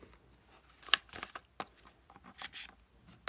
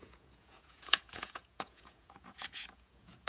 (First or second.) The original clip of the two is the first